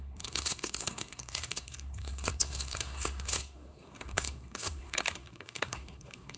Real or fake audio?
fake